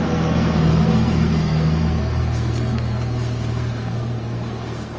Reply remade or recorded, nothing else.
remade